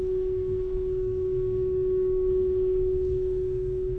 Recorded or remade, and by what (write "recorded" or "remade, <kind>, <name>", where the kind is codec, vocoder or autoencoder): remade, codec, SNAC